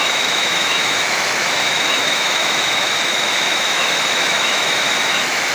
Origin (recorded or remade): remade